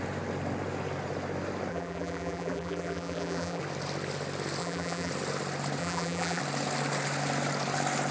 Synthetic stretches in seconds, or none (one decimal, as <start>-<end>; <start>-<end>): 1.7-3.6; 4.6-5.1; 5.8-6.4